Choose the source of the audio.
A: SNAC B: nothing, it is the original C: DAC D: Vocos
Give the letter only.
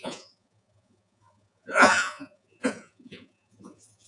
D